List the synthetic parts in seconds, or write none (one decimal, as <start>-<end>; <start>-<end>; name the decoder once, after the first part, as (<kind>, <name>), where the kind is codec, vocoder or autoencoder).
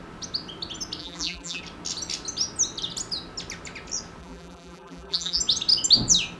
1.0-1.6 (vocoder, BigVGAN v2); 4.2-5.4